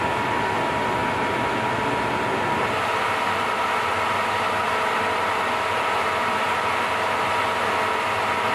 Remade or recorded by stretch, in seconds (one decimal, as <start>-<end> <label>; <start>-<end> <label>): 0.0-8.5 recorded